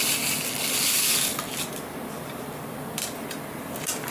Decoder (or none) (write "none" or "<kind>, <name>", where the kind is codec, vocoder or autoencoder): none